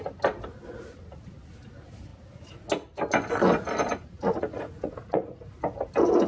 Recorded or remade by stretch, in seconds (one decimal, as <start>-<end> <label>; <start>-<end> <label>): 0.0-3.9 recorded; 3.9-5.4 remade; 5.4-6.3 recorded